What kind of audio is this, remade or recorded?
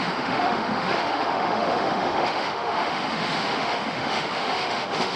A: remade